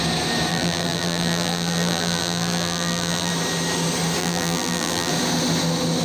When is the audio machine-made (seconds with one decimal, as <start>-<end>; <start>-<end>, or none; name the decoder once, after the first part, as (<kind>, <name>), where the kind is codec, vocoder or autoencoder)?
0.5-3.3 (vocoder, BigVGAN v2); 4.2-5.1